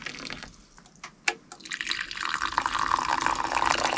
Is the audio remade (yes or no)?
no